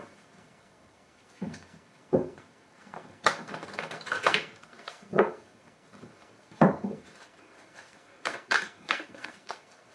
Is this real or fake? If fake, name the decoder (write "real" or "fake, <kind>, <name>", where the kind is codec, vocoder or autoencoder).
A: fake, codec, SNAC